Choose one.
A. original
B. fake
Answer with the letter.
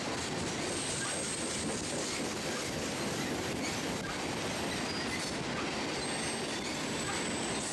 A